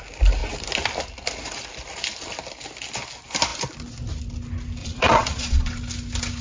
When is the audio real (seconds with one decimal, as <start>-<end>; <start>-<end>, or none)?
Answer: 0.0-4.8; 5.7-6.4